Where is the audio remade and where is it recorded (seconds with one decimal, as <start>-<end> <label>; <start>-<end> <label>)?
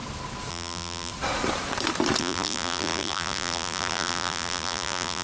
0.0-0.5 recorded; 0.5-1.1 remade; 1.1-2.2 recorded; 2.2-5.2 remade